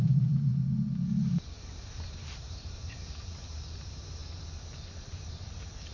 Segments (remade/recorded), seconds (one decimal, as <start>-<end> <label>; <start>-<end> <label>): 0.0-0.5 remade; 0.5-2.1 recorded; 2.1-4.2 remade; 4.2-5.0 recorded; 5.0-5.9 remade